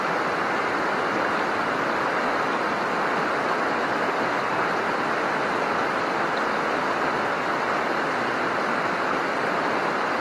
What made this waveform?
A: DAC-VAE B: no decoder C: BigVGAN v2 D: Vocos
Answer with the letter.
B